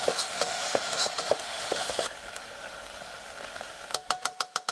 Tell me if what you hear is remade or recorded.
remade